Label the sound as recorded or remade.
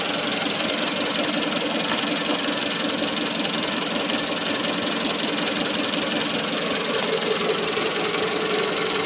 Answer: recorded